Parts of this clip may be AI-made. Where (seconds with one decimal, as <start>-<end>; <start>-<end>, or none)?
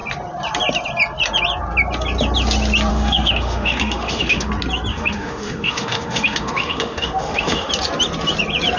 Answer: 2.9-4.5; 4.9-7.7